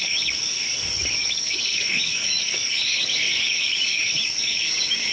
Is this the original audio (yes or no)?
no